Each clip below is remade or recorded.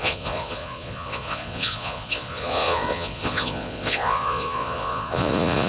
remade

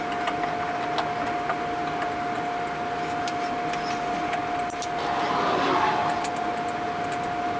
recorded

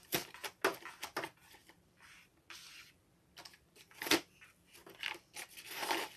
recorded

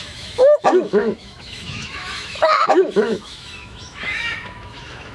remade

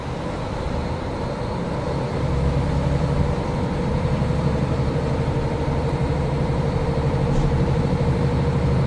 remade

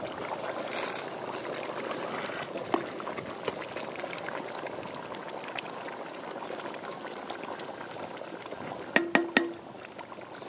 recorded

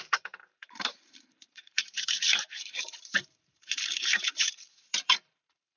remade